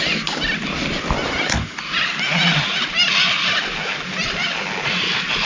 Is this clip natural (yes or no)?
yes